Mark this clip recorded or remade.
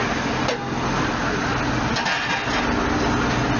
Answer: recorded